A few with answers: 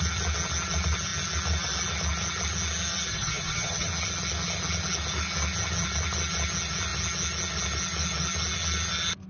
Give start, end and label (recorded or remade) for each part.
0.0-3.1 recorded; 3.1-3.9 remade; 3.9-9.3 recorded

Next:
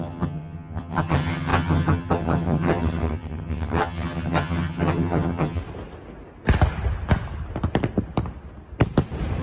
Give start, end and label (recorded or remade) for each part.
0.0-5.6 remade; 5.6-9.4 recorded

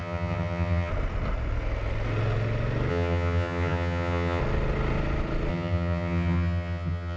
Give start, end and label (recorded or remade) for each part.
0.0-0.9 remade; 0.9-2.9 recorded; 2.9-4.4 remade; 4.4-5.5 recorded; 5.5-7.2 remade